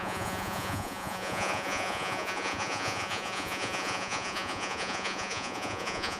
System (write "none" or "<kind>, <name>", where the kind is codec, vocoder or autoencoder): vocoder, Vocos